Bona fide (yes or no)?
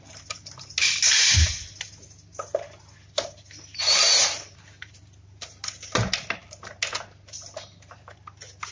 yes